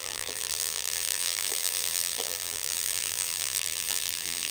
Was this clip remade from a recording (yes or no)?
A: yes